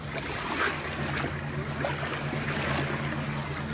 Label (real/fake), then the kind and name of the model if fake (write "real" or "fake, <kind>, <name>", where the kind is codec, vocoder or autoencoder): real